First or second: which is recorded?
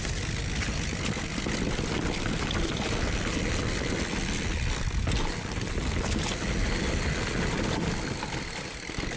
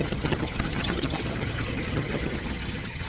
first